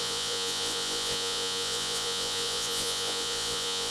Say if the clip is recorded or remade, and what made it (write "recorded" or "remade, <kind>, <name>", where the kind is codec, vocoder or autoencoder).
remade, vocoder, Vocos